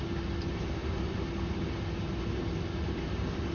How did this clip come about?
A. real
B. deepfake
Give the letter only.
A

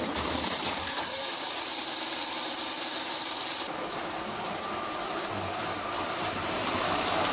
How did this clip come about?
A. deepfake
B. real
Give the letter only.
A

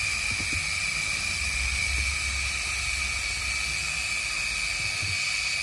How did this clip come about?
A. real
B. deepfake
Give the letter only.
A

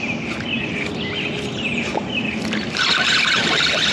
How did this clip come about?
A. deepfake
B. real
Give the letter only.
B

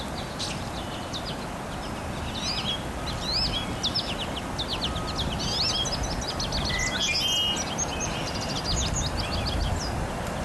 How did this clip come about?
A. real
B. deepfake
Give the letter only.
A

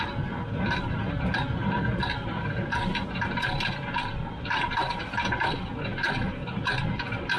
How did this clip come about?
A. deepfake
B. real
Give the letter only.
B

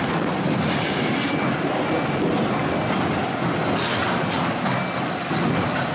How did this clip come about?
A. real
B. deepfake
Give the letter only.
A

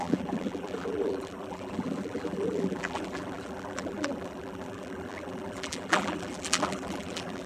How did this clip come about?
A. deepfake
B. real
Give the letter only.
A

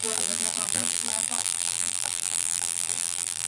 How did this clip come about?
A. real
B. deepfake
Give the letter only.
B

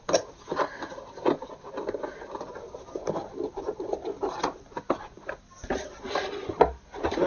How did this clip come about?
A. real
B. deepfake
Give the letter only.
A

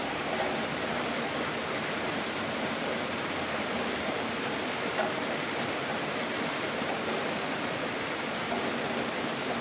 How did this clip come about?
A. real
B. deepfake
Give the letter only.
B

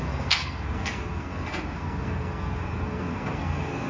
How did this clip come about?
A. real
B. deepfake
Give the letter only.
B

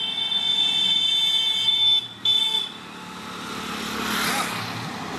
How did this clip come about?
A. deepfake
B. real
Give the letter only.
B